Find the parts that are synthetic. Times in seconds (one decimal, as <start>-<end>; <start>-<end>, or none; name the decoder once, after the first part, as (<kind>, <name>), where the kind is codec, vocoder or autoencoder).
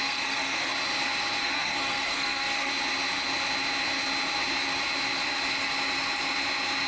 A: 0.0-0.7 (codec, SNAC); 1.4-2.7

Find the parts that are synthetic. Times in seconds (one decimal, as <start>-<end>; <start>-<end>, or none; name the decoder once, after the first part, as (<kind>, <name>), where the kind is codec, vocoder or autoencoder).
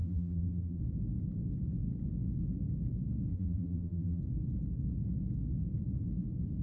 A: 0.0-0.8 (vocoder, BigVGAN v2); 3.3-4.2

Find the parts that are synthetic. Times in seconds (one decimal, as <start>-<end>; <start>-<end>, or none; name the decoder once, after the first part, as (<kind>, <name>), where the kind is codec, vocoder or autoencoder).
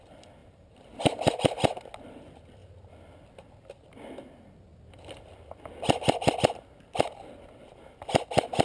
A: 0.4-1.8 (vocoder, BigVGAN v2)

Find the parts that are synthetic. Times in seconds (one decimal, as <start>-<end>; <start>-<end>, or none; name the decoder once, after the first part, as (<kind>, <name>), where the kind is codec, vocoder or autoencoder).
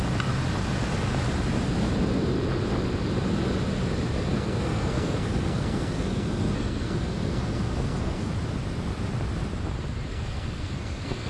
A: 4.3-8.3 (codec, SNAC); 10.1-11.3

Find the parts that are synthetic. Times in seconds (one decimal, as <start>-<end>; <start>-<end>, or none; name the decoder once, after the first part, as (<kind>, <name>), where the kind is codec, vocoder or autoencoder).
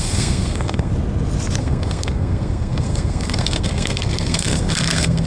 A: 0.0-0.9 (codec, SNAC); 1.6-5.3